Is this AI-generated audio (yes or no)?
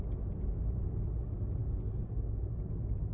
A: no